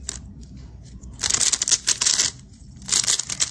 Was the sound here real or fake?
real